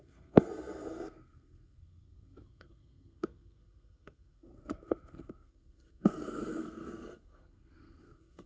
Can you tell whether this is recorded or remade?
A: remade